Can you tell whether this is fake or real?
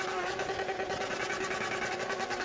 real